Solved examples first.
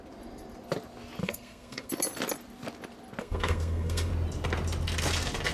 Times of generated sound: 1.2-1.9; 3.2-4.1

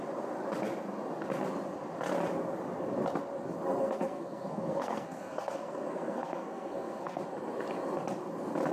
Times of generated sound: 3.8-7.2

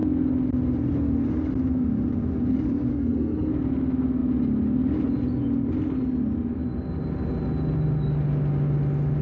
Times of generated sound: 2.9-3.5